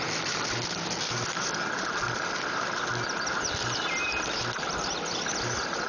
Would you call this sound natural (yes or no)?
yes